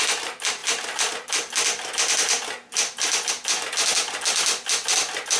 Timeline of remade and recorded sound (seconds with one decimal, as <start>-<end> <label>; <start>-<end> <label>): 0.0-5.4 recorded